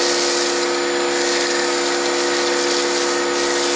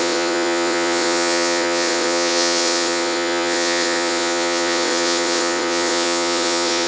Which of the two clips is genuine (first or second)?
first